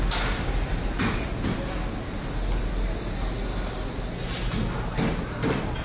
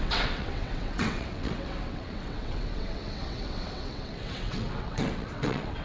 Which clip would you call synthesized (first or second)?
second